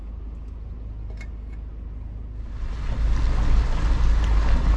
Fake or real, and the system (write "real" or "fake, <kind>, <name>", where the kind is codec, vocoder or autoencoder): real